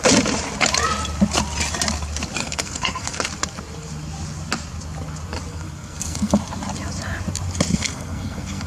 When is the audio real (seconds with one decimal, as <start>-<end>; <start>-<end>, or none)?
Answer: 0.0-2.4; 3.2-5.5; 6.4-7.7